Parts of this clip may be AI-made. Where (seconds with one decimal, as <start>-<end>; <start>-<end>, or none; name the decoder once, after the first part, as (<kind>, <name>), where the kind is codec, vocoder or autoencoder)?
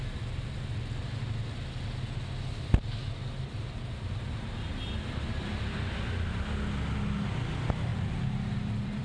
7.9-9.0 (vocoder, BigVGAN v2)